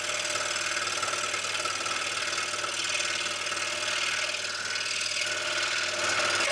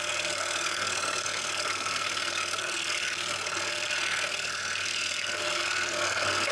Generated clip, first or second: second